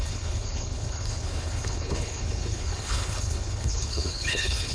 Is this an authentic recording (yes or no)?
no